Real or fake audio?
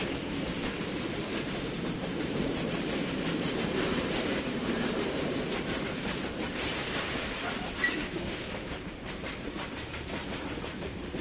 fake